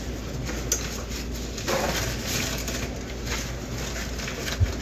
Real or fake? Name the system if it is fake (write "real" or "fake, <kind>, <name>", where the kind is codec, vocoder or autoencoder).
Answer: real